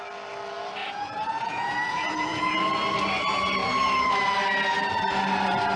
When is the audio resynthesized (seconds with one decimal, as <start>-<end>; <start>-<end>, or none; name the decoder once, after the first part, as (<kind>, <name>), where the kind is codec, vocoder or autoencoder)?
0.8-2.6 (vocoder, Vocos)